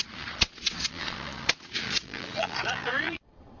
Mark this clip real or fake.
fake